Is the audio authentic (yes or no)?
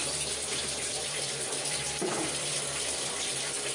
no